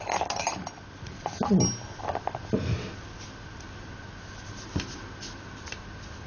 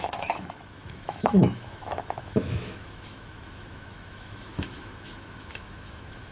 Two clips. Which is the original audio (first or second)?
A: first